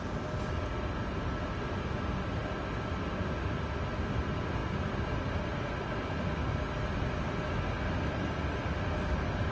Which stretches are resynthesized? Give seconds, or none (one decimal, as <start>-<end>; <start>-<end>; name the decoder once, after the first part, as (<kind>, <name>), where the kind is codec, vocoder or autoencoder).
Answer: none